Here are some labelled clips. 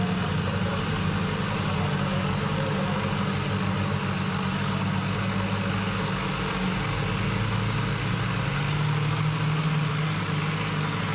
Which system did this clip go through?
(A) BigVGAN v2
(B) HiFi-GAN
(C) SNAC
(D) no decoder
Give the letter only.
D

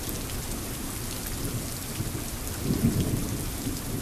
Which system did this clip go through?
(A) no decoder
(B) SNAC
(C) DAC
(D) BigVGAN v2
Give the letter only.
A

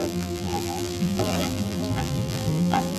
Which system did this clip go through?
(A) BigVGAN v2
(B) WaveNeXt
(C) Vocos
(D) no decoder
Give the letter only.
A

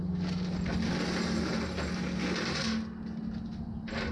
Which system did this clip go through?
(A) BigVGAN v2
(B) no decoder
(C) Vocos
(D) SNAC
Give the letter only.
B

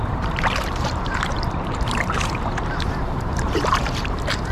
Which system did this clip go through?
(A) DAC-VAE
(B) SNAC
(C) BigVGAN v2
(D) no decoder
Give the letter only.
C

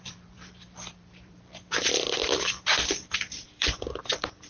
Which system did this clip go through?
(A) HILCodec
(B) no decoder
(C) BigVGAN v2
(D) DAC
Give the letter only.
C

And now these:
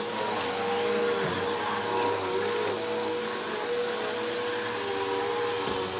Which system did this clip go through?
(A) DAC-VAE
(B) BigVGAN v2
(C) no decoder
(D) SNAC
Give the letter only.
C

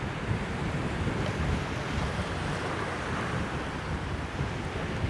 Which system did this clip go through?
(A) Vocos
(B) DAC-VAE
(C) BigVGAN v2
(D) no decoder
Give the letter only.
D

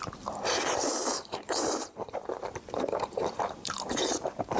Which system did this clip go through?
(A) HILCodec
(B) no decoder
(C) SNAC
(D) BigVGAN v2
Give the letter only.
D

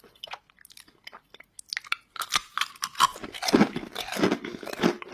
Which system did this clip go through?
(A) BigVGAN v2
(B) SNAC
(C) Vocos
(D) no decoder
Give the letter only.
D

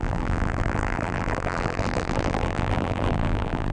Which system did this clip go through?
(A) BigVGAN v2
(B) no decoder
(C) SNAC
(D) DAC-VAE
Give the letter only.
A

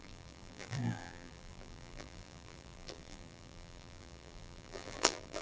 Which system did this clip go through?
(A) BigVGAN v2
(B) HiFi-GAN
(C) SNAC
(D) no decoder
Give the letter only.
A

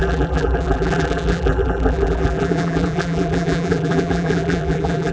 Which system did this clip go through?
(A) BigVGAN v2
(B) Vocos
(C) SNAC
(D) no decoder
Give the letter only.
A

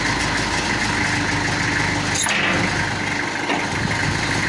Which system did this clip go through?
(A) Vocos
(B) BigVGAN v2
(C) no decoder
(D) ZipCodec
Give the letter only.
C